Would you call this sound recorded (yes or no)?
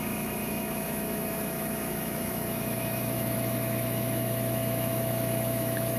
no